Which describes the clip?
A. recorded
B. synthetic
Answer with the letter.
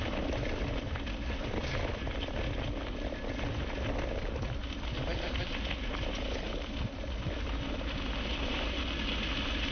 A